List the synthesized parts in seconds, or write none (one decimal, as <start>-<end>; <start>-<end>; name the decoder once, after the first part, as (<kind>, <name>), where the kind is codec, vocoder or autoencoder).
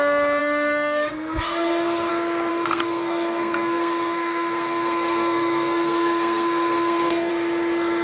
0.4-2.1 (codec, SNAC); 2.5-7.3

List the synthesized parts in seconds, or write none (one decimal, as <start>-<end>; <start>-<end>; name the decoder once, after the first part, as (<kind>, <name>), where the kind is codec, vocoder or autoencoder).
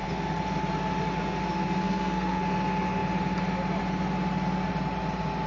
1.8-2.4 (codec, SNAC)